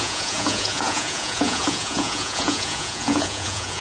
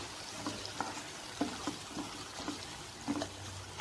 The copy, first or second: first